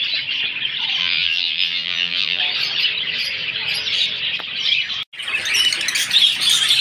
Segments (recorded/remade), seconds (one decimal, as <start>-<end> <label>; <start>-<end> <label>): 0.0-1.0 recorded; 1.0-2.4 remade; 2.4-6.8 recorded